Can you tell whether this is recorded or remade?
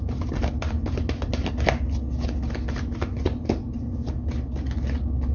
recorded